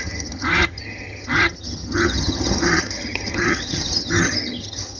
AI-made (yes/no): yes